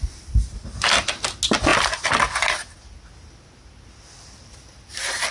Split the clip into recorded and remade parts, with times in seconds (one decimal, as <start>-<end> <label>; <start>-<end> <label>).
0.0-5.3 recorded